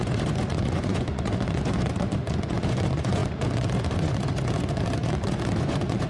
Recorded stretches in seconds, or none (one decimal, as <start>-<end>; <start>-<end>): none